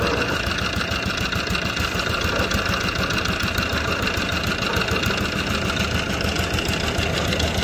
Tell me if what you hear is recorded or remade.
recorded